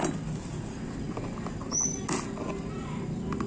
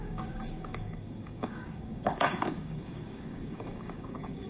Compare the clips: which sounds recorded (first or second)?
first